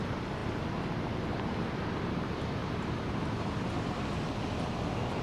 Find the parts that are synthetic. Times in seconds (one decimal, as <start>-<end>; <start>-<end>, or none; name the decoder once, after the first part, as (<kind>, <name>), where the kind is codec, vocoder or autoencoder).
none